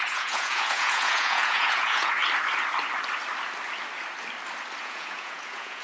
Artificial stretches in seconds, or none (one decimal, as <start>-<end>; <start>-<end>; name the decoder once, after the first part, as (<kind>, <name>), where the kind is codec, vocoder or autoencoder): 0.0-2.2 (vocoder, Vocos); 4.8-5.8